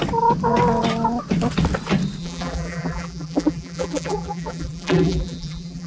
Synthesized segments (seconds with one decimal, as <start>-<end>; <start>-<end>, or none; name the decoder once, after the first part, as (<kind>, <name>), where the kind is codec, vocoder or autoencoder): 2.2-5.9 (vocoder, BigVGAN v2)